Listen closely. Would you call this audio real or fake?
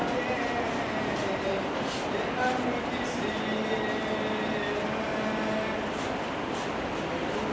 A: real